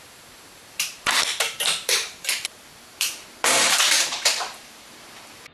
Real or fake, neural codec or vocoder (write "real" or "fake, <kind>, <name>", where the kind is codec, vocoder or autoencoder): fake, vocoder, BigVGAN v2